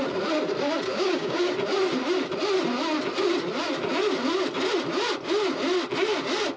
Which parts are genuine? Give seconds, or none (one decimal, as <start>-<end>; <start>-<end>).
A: 0.0-0.9; 1.5-6.6